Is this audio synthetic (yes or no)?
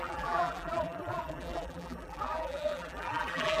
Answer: yes